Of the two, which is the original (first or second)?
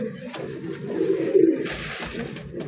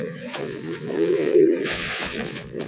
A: first